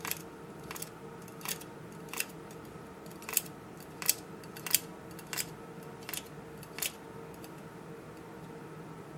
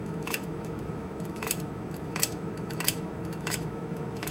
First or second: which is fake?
second